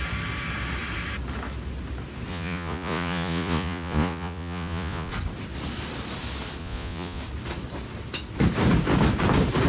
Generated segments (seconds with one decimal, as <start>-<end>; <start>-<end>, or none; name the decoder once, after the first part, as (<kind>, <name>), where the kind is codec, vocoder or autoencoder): 2.3-5.1 (vocoder, Vocos); 6.6-7.2